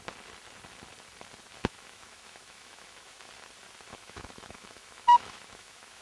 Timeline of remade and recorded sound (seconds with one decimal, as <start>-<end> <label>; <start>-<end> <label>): 0.0-1.6 recorded; 1.6-3.3 remade; 3.3-3.9 recorded; 3.9-6.0 remade